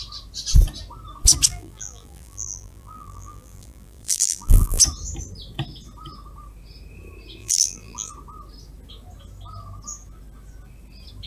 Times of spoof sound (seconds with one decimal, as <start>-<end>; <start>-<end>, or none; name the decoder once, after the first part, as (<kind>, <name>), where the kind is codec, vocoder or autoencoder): 1.5-4.8 (vocoder, BigVGAN v2); 7.4-8.1